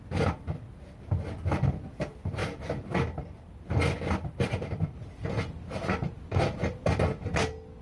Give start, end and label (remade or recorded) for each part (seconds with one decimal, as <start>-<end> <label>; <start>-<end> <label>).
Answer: 0.0-7.8 recorded